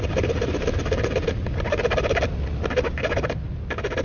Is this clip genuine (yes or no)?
yes